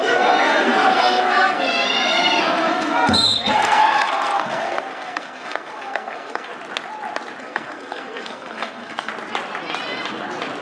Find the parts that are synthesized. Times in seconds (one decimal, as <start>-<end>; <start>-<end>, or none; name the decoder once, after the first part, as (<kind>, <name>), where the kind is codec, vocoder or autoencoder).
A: 0.0-6.5 (codec, SNAC); 7.4-9.1